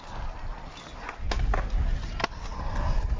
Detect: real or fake real